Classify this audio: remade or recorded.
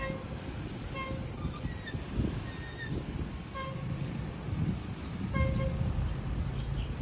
recorded